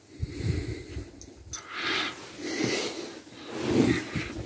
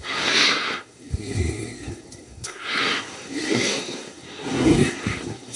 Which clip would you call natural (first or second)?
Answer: first